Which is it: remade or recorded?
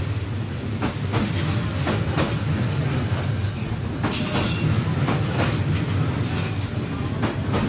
recorded